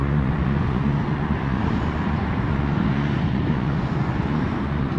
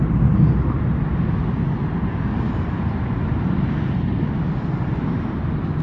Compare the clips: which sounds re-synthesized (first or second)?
first